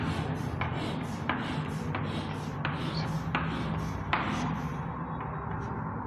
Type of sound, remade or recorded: recorded